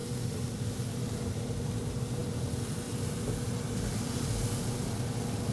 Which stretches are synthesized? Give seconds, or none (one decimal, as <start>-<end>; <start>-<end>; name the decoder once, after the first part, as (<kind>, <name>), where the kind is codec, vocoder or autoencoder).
none

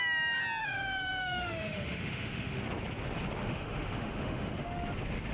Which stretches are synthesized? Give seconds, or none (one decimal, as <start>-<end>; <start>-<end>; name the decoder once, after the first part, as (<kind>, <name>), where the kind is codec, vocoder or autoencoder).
0.6-2.6 (autoencoder, DAC-VAE); 3.4-4.7